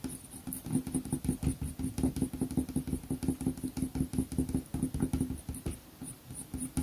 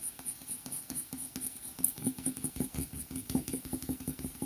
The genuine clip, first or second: first